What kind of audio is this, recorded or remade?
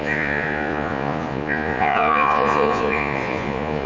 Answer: remade